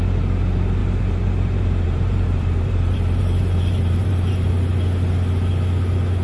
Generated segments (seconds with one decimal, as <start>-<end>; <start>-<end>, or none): 0.8-4.5